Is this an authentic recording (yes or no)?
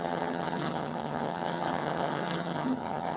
no